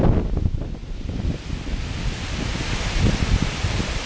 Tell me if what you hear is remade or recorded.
recorded